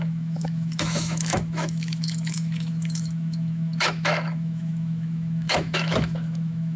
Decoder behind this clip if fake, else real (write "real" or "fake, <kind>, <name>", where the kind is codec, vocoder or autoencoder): fake, autoencoder, DAC-VAE